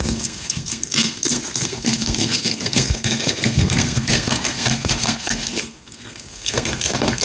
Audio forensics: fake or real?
fake